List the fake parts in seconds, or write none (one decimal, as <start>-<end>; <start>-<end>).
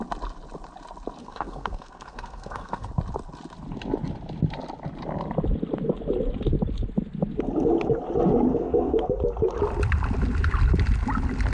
1.2-2.9; 8.5-9.1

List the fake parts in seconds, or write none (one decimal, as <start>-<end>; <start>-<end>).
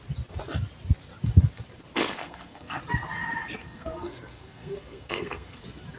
2.0-2.8; 3.6-5.6